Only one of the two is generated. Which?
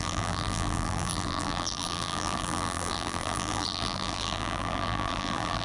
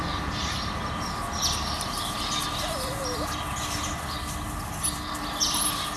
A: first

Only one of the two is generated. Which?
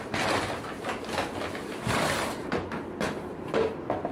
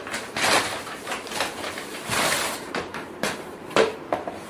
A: second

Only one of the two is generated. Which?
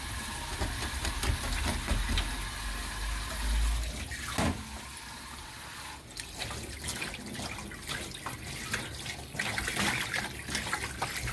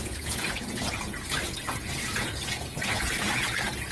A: second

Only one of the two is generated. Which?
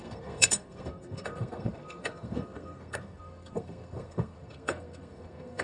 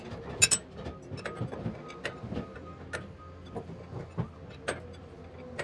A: first